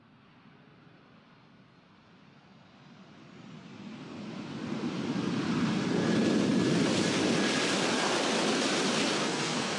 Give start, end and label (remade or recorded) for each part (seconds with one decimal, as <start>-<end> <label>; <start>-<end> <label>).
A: 0.0-9.2 recorded; 9.2-9.8 remade